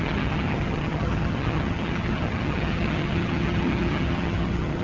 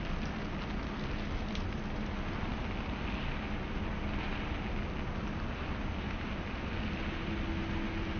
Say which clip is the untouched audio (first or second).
second